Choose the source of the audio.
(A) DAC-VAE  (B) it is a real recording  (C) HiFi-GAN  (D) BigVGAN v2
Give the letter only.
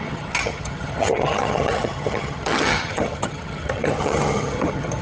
C